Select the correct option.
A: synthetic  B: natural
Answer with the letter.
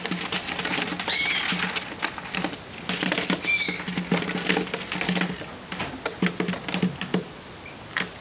B